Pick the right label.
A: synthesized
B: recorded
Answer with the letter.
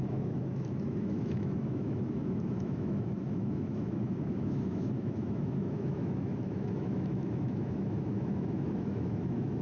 A